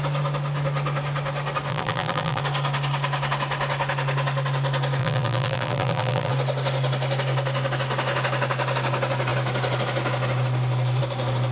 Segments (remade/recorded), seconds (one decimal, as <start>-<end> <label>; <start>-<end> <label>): 0.0-1.7 recorded; 1.7-2.4 remade; 2.4-5.0 recorded; 5.0-6.3 remade; 6.3-11.5 recorded